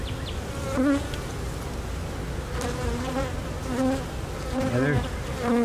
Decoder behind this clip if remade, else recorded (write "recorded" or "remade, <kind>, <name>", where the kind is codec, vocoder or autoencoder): recorded